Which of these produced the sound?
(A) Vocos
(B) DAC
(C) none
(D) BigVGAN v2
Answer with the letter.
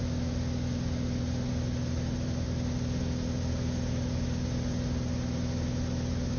C